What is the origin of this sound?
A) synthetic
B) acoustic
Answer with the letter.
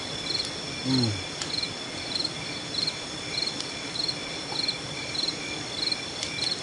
B